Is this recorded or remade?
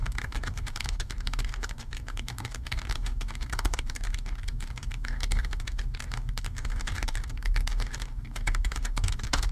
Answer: remade